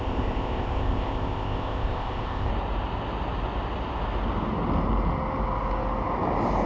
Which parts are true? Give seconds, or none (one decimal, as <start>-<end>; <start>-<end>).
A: 2.5-6.7